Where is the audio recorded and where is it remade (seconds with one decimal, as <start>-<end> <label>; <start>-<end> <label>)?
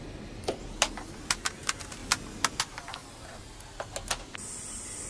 0.0-5.1 recorded